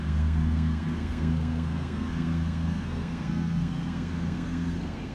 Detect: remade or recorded remade